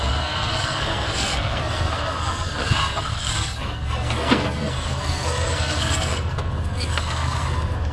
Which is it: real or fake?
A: fake